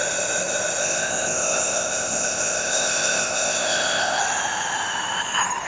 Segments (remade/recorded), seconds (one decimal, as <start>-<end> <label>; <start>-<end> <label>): 0.0-0.8 recorded; 0.8-4.2 remade; 4.2-5.7 recorded